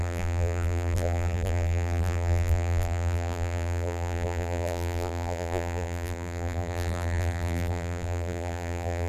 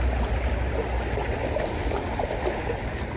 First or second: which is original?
second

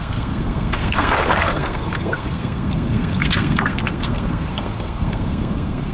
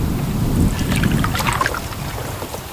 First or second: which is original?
second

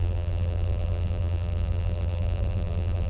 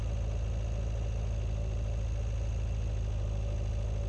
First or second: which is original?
second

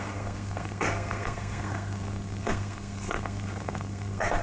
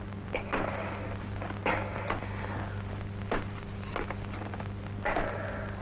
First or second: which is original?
second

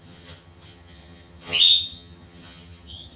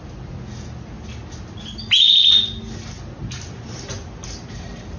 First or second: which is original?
second